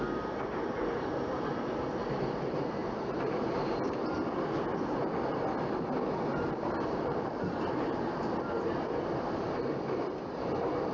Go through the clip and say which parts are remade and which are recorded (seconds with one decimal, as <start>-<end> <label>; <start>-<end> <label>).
0.0-2.8 recorded; 2.8-3.9 remade; 3.9-6.3 recorded; 6.3-7.6 remade; 7.6-10.9 recorded